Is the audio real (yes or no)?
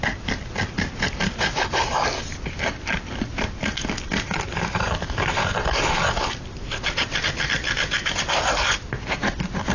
yes